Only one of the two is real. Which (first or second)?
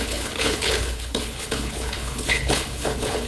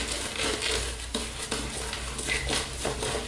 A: second